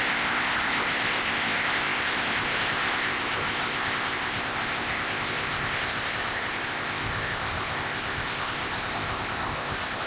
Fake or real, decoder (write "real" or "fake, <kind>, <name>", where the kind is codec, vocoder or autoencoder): fake, codec, ZipCodec